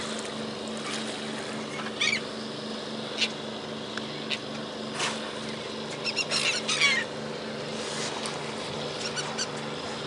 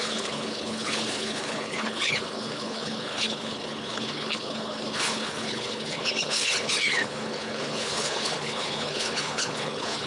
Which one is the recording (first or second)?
first